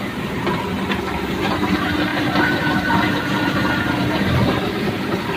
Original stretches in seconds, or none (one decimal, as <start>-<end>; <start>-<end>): 0.0-2.1